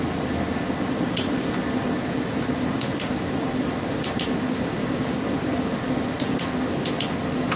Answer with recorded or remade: recorded